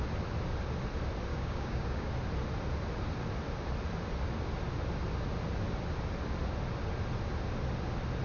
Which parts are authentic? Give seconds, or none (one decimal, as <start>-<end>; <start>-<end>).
0.0-1.3; 2.1-8.2